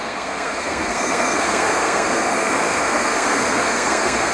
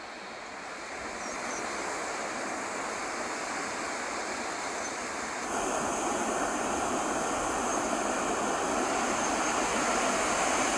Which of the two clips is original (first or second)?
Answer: second